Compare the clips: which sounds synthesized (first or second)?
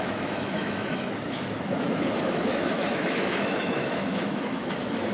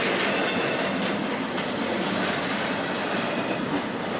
first